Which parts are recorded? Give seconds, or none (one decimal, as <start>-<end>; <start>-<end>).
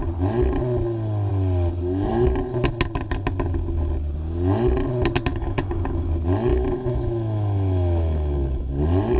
0.0-5.3; 6.1-6.5; 8.7-9.2